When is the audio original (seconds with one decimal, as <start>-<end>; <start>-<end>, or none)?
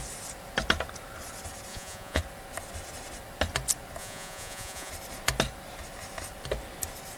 0.0-1.7; 2.2-4.0; 4.9-7.2